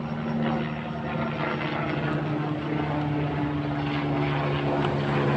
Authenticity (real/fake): real